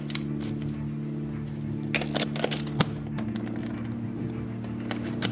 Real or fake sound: real